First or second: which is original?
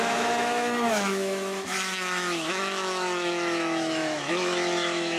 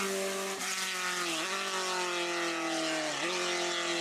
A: second